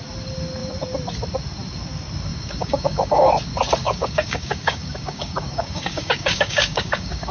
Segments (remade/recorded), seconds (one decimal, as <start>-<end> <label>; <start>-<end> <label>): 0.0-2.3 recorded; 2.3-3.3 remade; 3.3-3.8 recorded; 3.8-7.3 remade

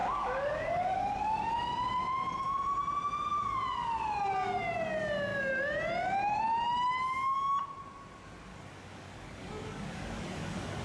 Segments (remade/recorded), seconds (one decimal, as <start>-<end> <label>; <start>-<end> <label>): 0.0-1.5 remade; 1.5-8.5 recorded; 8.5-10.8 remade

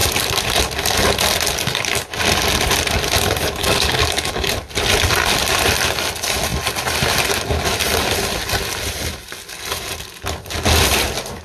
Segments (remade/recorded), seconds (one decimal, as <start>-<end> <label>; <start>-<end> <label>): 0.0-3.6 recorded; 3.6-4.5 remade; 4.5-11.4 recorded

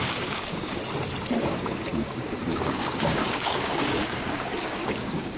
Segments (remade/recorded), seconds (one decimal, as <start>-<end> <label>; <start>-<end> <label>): 0.0-0.8 remade; 0.8-1.4 recorded; 1.4-5.4 remade